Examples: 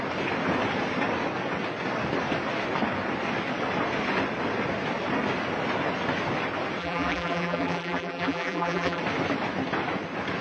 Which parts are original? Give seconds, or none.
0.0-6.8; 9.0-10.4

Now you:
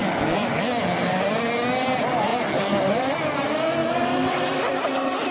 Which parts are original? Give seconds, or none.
0.0-3.8; 4.6-5.3

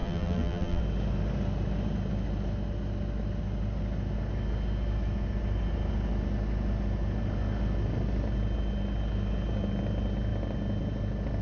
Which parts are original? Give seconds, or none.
0.8-11.4

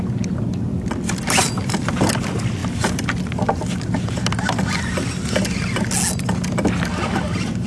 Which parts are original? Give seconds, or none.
2.6-7.2

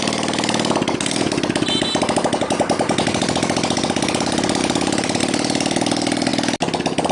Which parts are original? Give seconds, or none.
0.0-4.6; 5.2-7.1

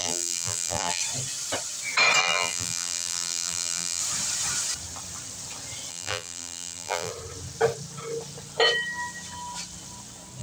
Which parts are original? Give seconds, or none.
1.0-2.2; 4.0-5.9; 7.1-10.4